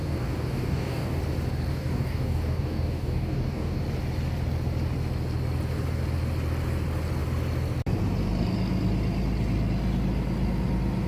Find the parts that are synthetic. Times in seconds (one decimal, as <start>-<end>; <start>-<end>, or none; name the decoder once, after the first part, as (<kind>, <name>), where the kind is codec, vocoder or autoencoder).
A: 0.0-1.2 (codec, DAC); 1.7-3.8